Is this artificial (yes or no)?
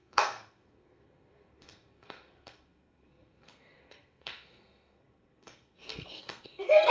yes